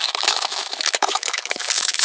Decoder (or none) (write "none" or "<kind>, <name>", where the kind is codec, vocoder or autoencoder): autoencoder, DAC-VAE